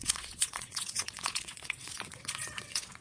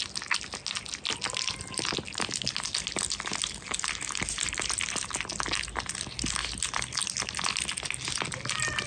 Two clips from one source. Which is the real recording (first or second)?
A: second